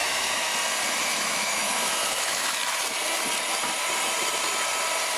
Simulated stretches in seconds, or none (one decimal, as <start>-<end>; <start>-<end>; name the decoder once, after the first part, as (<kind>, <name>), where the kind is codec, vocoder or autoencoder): 0.0-0.5 (autoencoder, DAC-VAE); 1.0-2.6